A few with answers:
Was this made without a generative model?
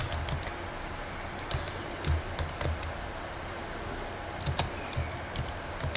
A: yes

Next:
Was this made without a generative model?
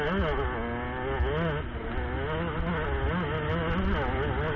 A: yes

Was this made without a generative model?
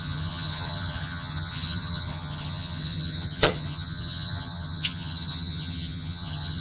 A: no